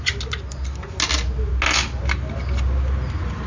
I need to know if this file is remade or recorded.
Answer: recorded